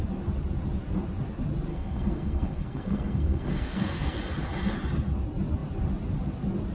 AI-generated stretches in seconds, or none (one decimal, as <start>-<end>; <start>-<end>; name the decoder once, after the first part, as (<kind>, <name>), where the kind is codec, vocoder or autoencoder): 1.7-4.2 (codec, SNAC)